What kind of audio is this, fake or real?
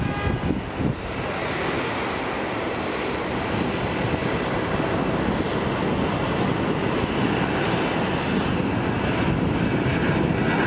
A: real